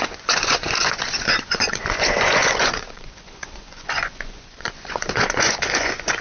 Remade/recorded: remade